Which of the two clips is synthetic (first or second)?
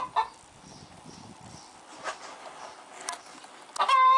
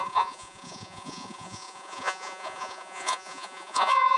second